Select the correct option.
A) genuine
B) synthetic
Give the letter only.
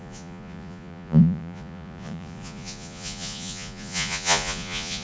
B